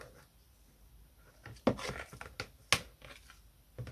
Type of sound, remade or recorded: recorded